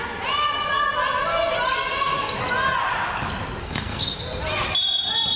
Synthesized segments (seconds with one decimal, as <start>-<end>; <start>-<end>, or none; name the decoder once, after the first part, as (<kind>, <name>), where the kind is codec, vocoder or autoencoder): 3.6-4.2 (codec, SNAC)